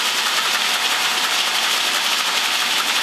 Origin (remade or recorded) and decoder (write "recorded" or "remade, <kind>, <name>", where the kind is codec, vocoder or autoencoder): remade, vocoder, BigVGAN v2